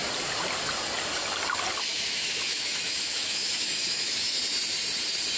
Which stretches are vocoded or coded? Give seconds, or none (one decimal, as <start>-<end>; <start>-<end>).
1.9-4.4